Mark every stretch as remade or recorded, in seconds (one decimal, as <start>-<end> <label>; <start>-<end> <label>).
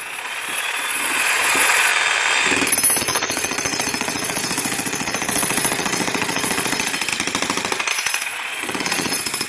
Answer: 0.0-1.9 remade; 1.9-3.0 recorded; 3.0-7.1 remade; 7.1-7.9 recorded; 7.9-9.5 remade